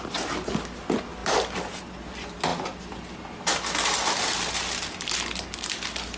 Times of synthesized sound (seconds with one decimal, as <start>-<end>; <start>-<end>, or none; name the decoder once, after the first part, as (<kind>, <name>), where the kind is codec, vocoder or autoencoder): none